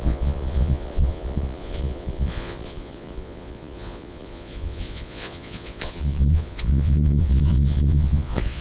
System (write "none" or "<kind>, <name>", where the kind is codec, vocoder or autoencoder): vocoder, Vocos